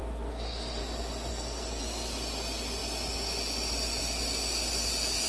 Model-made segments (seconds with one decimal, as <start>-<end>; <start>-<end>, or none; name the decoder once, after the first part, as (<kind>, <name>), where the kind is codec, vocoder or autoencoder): 0.0-0.8 (codec, SNAC); 1.3-1.8